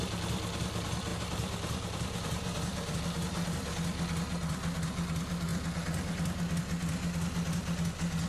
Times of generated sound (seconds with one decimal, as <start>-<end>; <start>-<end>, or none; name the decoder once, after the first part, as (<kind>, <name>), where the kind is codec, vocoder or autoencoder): 1.1-3.0 (vocoder, BigVGAN v2)